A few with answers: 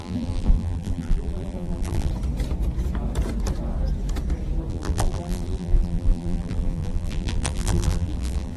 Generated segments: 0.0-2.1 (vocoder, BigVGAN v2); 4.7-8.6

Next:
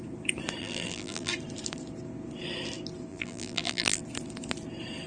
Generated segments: 0.6-1.3 (vocoder, BigVGAN v2); 3.1-4.0

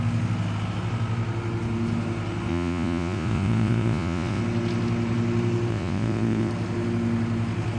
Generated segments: 2.5-4.4 (vocoder, Vocos); 5.7-6.5